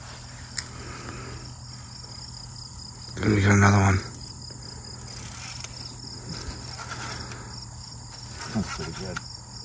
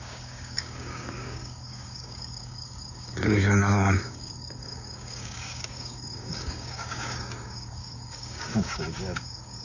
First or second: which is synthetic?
second